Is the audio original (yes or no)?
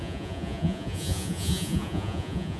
no